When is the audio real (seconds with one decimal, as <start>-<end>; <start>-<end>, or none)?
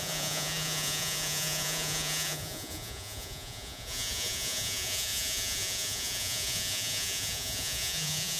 none